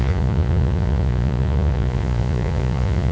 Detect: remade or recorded remade